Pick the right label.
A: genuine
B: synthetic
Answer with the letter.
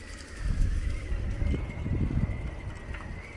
A